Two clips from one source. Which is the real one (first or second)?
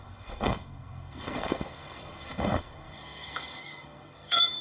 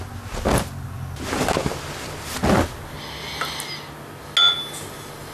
second